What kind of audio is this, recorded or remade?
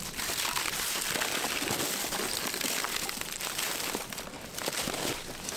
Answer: recorded